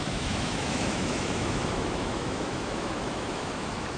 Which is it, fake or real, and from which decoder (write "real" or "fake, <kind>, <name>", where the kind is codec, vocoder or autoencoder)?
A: fake, autoencoder, DAC-VAE